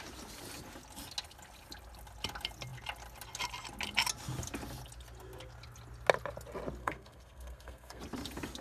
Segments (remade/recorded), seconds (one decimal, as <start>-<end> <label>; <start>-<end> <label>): 0.0-6.8 recorded; 6.8-8.0 remade; 8.0-8.6 recorded